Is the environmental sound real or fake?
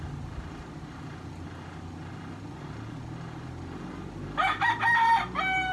real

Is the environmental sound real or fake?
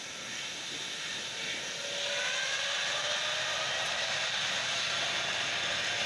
real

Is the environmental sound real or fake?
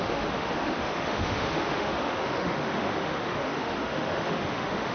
fake